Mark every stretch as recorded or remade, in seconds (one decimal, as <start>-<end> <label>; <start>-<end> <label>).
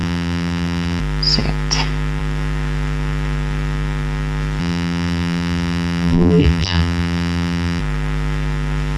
0.0-1.0 remade; 1.0-4.6 recorded; 4.6-7.8 remade; 7.8-9.0 recorded